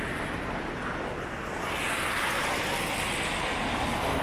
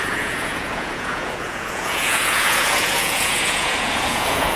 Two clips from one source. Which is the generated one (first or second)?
second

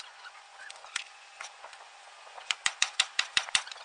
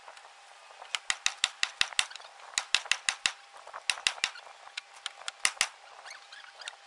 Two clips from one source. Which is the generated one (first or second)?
first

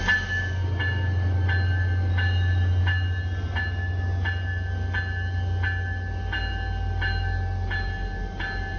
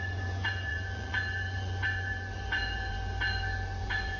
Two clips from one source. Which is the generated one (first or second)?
second